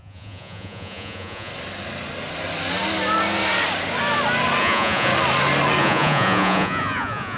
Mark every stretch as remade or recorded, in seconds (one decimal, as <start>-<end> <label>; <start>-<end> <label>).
0.0-1.5 remade; 1.5-4.6 recorded; 4.6-5.1 remade; 5.1-5.8 recorded; 5.8-7.4 remade